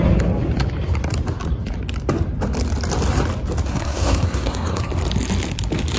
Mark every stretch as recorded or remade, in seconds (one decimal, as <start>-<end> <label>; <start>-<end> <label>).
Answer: 0.0-3.7 recorded; 3.7-4.8 remade; 4.8-6.0 recorded